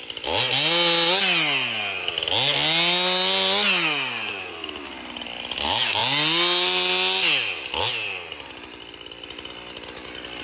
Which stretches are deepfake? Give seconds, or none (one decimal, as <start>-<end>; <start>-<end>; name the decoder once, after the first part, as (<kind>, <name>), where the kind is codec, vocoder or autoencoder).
none